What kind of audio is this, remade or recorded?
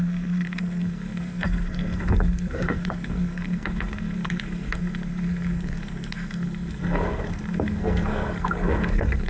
remade